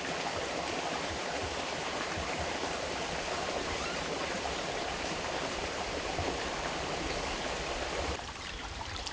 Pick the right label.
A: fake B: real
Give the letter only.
A